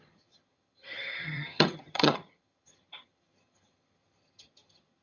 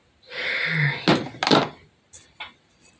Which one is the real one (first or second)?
second